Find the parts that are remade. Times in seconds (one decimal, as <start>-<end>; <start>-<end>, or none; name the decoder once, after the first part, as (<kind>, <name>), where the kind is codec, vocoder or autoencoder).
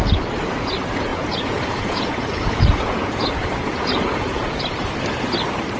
1.1-4.6 (vocoder, Vocos)